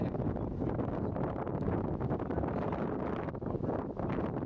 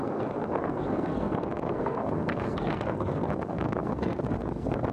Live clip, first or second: first